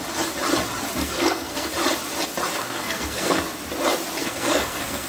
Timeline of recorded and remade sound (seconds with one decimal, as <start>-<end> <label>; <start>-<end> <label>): 0.0-1.0 recorded; 1.0-1.7 remade; 1.7-2.6 recorded; 2.6-3.4 remade; 3.4-4.2 recorded; 4.2-5.1 remade